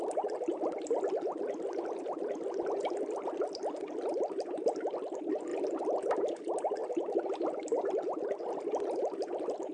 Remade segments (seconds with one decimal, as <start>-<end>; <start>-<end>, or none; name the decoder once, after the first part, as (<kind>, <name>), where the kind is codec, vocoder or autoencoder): 5.5-6.1 (vocoder, BigVGAN v2)